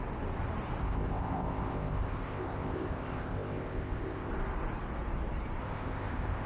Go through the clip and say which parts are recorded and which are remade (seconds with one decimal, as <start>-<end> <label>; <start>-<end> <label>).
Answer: 0.0-0.8 recorded; 0.8-4.3 remade; 4.3-5.6 recorded; 5.6-6.5 remade